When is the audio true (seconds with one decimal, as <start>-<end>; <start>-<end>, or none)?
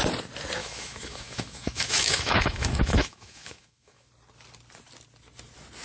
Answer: 0.0-0.6; 4.1-5.8